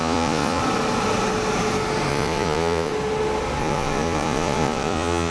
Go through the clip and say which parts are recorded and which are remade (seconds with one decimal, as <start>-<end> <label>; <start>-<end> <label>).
0.0-0.6 remade; 0.6-2.1 recorded; 2.1-2.9 remade; 2.9-3.6 recorded; 3.6-5.3 remade